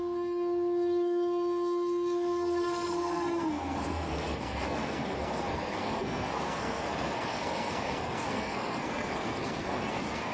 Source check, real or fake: fake